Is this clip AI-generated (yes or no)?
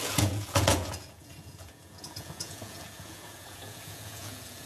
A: yes